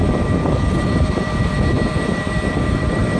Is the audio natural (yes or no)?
no